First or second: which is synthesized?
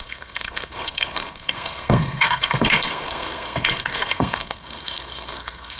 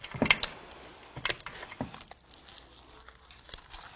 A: first